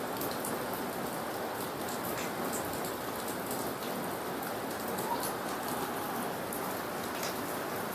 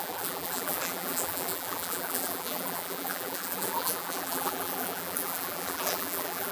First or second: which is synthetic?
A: second